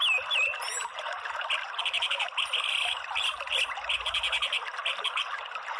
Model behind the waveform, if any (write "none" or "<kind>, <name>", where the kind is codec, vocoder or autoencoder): none